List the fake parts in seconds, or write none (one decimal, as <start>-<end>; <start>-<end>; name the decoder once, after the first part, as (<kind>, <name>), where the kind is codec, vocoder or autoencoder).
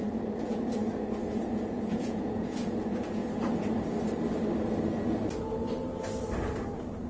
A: 0.0-0.8 (vocoder, Vocos); 1.4-3.2